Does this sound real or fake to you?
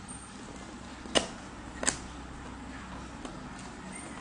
real